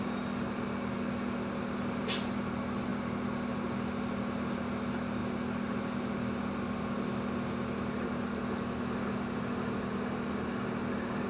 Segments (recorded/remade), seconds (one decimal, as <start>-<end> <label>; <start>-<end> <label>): 0.0-11.3 recorded